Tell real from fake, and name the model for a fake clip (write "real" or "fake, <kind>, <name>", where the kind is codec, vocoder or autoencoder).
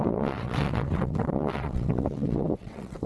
fake, vocoder, WaveNeXt